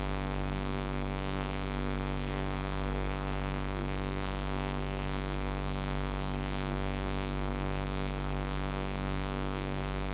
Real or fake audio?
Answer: fake